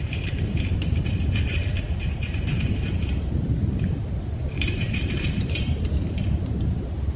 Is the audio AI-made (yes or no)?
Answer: yes